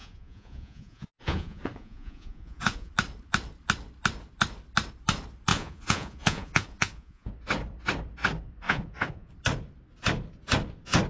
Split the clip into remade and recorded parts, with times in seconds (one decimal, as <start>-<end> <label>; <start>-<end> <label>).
0.0-2.9 remade; 2.9-5.5 recorded; 5.5-7.3 remade; 7.3-8.6 recorded; 8.6-9.3 remade; 9.3-11.1 recorded